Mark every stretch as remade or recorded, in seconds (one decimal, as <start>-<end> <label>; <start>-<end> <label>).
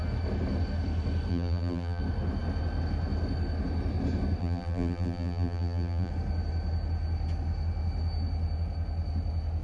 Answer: 0.0-1.3 recorded; 1.3-2.0 remade; 2.0-4.4 recorded; 4.4-6.1 remade; 6.1-9.6 recorded